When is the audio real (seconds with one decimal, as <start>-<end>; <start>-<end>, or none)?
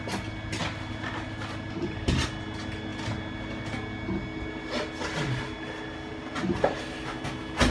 0.0-7.7